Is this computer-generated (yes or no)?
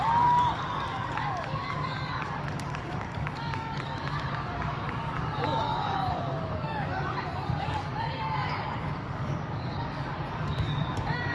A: yes